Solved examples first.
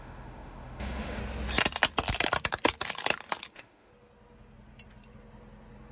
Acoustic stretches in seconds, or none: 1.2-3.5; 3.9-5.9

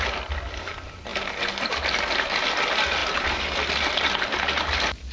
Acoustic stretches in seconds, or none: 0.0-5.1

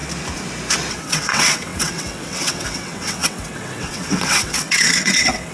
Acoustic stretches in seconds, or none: 0.0-0.9